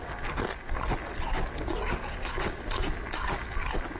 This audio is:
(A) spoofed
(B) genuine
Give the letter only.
B